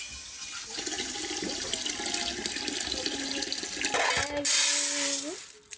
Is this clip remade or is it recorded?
recorded